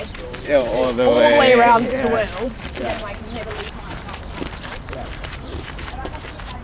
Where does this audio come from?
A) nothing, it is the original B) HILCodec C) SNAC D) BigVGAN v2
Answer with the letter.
D